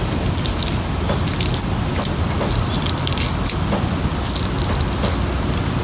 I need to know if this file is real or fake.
real